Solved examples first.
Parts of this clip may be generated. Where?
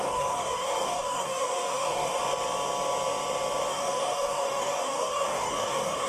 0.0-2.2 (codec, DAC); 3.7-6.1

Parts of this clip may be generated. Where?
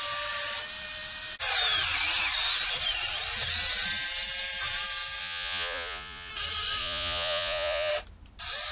5.2-6.3 (vocoder, Vocos); 6.8-7.9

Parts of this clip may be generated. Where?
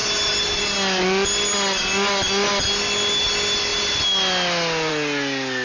none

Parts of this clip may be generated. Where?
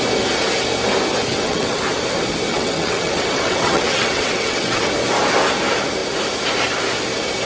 1.3-1.8 (vocoder, WaveNeXt); 2.5-4.9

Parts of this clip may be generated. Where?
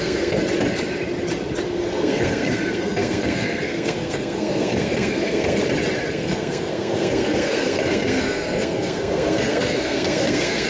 0.0-0.4 (codec, SNAC); 1.7-5.6; 6.1-10.7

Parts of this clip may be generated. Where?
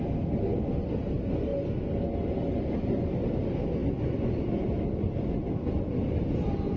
none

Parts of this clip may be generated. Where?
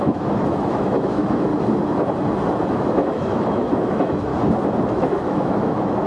0.0-1.5 (autoencoder, DAC-VAE); 2.7-4.3; 4.9-6.1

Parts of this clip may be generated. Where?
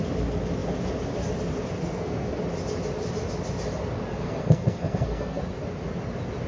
1.8-2.4 (codec, SNAC); 4.1-5.4